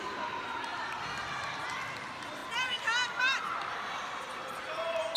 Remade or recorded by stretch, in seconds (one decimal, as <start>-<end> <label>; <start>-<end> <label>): 0.0-5.2 recorded